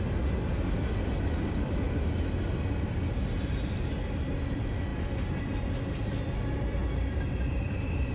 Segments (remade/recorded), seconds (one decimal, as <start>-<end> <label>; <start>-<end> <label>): 0.0-8.1 recorded